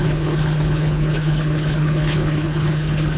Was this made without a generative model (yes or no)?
no